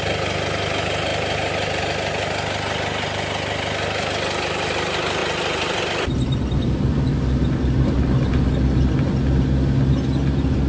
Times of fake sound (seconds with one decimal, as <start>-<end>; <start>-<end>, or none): 1.1-1.8